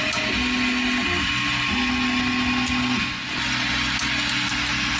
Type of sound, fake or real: real